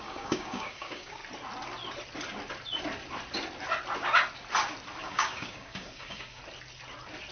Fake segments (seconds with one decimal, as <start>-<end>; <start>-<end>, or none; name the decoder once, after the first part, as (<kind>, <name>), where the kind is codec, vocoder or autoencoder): 0.0-1.2 (codec, DAC); 5.0-6.4